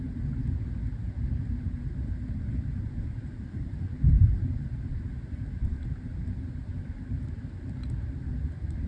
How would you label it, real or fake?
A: fake